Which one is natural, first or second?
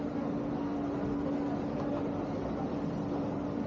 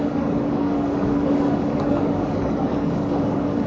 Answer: first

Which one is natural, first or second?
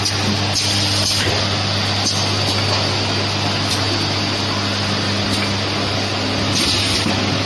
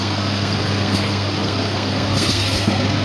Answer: first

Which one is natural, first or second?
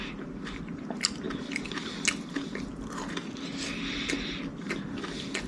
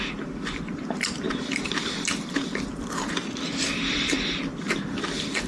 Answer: first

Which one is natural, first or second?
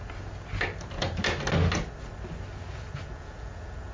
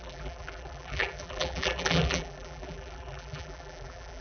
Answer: first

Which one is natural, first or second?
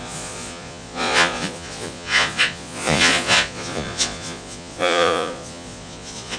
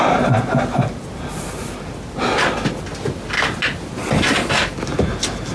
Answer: second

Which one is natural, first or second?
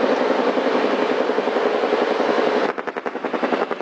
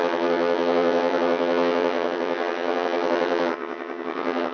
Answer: first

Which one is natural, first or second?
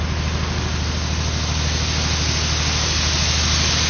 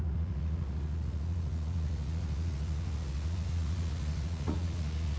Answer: first